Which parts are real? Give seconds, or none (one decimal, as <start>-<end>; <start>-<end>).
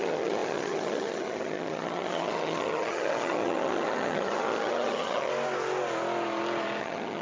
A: 5.3-6.8